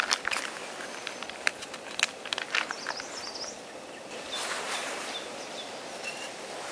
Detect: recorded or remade recorded